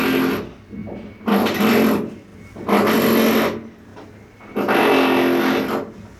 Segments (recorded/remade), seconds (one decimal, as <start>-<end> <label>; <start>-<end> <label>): 0.0-0.8 recorded; 0.8-1.9 remade; 1.9-6.2 recorded